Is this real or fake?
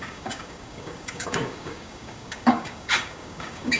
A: fake